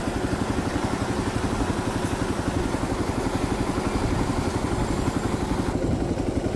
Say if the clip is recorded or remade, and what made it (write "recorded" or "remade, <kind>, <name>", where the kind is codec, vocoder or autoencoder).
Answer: recorded